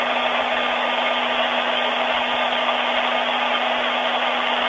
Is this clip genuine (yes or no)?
yes